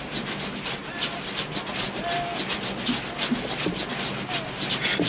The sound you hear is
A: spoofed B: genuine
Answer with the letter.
B